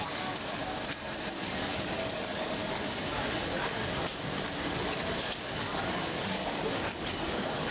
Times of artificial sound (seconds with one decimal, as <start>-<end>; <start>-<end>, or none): 0.0-0.6; 1.4-2.6; 5.2-7.7